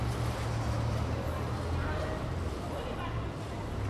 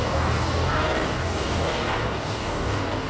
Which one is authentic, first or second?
first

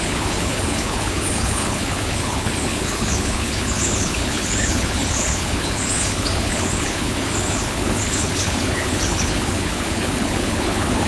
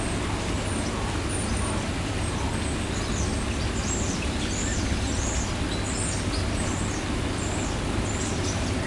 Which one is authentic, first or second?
second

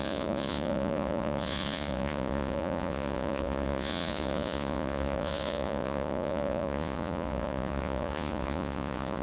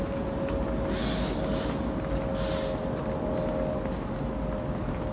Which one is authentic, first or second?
second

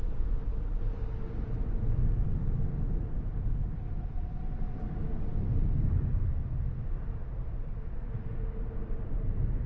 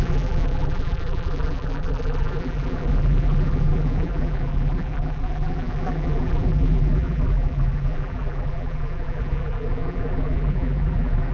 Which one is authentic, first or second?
first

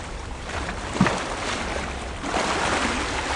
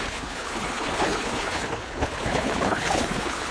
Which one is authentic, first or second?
first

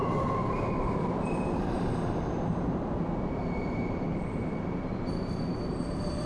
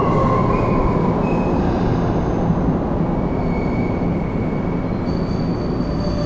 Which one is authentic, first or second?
second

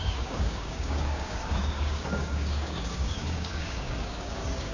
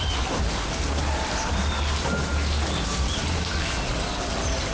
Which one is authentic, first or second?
second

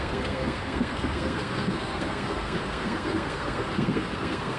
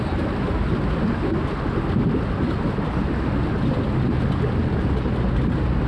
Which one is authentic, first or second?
second